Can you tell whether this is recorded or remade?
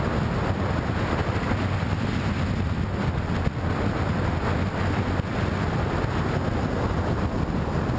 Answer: recorded